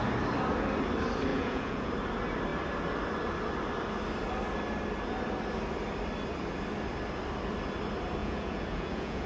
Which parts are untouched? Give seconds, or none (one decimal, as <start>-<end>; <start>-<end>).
0.0-1.3; 1.9-8.2

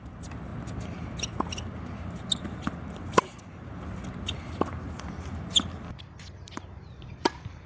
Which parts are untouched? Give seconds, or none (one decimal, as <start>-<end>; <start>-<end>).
0.0-7.7

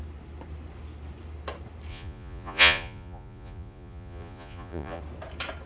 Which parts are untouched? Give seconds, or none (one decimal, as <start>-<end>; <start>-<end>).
0.0-1.9; 5.0-5.7

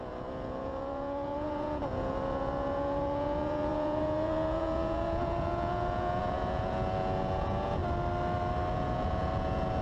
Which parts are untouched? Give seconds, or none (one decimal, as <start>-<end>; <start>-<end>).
7.8-8.7

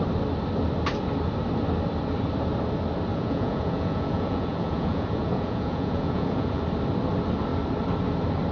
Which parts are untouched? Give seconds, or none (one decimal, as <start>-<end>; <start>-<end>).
0.0-3.1; 6.6-8.5

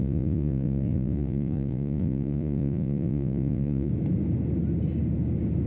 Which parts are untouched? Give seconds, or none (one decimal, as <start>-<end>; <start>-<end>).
3.9-5.7

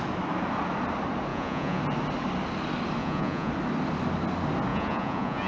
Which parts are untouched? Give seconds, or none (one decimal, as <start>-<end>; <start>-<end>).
0.0-1.3; 1.8-3.0; 3.5-4.7